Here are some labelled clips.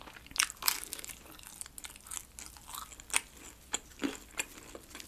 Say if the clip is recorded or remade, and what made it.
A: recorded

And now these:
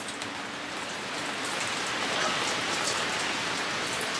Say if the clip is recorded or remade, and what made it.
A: recorded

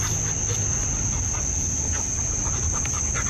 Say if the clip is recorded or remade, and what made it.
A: recorded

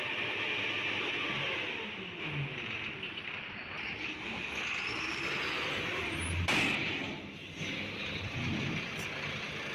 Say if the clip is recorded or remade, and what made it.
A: recorded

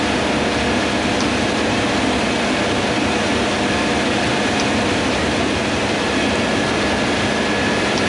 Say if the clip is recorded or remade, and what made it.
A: recorded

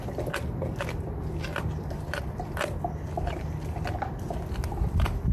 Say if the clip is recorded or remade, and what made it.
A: recorded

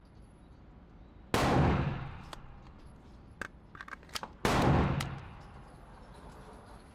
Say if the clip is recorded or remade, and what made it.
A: recorded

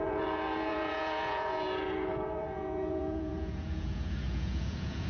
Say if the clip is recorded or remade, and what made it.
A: remade, vocoder, Vocos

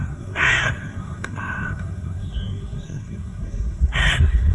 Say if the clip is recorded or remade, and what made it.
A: remade, codec, SNAC